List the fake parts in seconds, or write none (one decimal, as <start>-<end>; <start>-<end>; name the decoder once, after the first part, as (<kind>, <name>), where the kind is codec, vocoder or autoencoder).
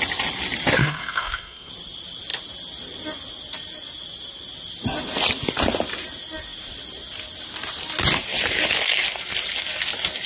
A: 0.8-1.7 (codec, SNAC)